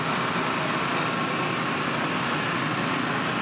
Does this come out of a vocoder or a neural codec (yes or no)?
no